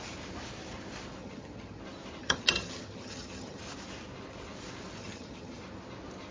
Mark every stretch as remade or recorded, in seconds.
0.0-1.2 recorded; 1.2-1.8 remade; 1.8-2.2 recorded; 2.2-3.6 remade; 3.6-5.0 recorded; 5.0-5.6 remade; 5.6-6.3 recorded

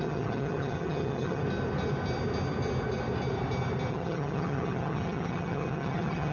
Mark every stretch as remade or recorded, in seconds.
0.0-1.4 remade; 1.4-3.9 recorded; 3.9-6.3 remade

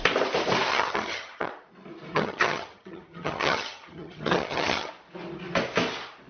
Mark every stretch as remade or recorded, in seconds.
0.0-0.7 recorded; 0.7-1.5 remade; 1.5-2.1 recorded; 2.1-4.9 remade; 4.9-6.3 recorded

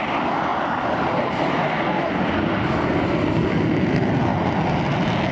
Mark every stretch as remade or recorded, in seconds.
0.0-5.3 recorded

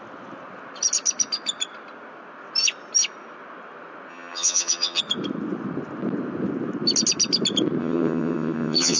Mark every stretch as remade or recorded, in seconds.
0.0-4.1 recorded; 4.1-5.0 remade; 5.0-7.8 recorded; 7.8-9.0 remade

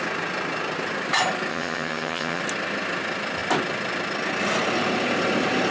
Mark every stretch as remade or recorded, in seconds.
0.0-1.5 recorded; 1.5-2.4 remade; 2.4-5.7 recorded

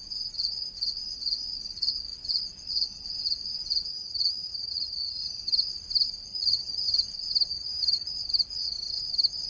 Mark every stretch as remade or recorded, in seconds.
0.0-3.9 recorded; 3.9-5.2 remade; 5.2-6.3 recorded; 6.3-7.1 remade; 7.1-7.5 recorded; 7.5-8.1 remade; 8.1-9.5 recorded